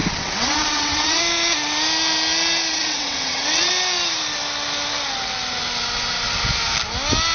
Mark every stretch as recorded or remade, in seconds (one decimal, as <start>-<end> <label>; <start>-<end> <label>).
0.0-1.2 remade; 1.2-2.7 recorded; 2.7-3.7 remade; 3.7-7.3 recorded